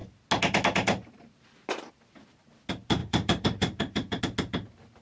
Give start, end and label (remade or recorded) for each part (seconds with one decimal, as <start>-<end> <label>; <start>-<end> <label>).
0.0-3.0 recorded; 3.0-4.2 remade; 4.2-5.0 recorded